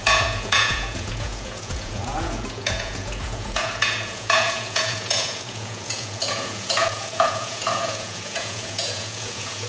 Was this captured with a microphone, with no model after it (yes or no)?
no